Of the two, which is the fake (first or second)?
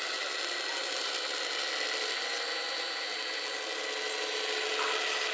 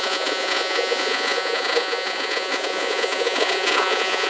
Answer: second